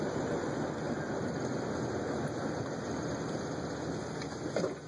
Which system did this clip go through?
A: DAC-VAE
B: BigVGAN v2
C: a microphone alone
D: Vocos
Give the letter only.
C